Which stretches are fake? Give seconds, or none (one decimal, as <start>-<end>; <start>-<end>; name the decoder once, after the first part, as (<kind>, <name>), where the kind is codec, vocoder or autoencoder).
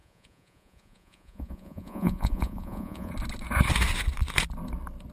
0.0-3.1 (vocoder, Vocos)